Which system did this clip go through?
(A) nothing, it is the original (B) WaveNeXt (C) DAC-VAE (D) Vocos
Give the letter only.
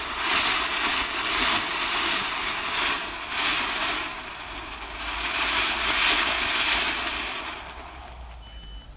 A